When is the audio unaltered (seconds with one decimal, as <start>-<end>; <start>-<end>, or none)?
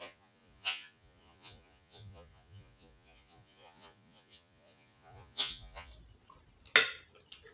5.9-7.5